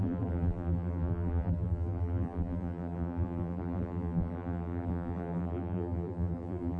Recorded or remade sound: remade